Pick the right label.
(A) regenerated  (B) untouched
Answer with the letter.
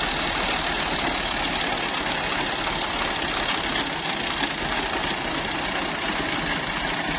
B